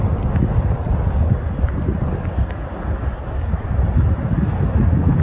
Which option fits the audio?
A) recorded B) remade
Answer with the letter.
A